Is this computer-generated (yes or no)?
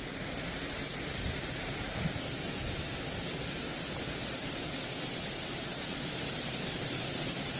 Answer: yes